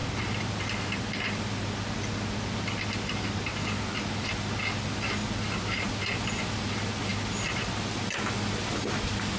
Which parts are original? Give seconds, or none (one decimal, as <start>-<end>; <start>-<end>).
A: 0.0-9.4